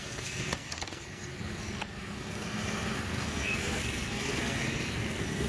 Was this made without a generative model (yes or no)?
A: no